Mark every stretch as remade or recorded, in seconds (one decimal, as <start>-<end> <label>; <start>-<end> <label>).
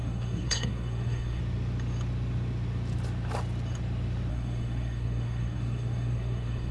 0.0-1.4 remade; 1.4-4.3 recorded; 4.3-6.7 remade